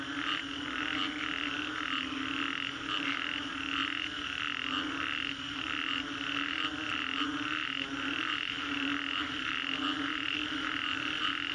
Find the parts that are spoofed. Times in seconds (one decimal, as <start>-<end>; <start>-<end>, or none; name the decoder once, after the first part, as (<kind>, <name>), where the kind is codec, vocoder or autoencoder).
none